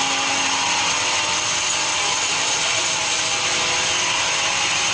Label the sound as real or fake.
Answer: real